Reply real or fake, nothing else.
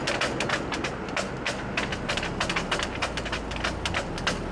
real